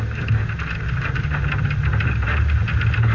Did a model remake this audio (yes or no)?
no